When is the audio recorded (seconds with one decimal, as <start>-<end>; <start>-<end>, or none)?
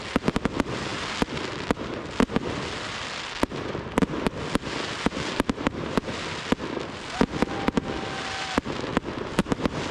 0.0-9.9